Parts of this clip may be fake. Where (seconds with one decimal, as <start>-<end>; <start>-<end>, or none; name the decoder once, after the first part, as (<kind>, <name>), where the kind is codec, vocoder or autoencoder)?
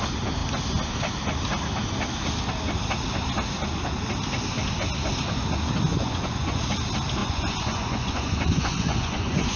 5.9-6.6 (vocoder, Vocos); 7.2-9.6